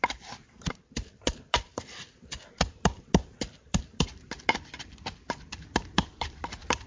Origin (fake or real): fake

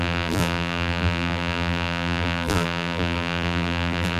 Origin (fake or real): fake